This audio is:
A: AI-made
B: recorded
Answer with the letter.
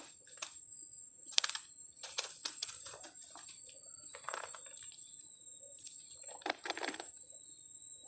A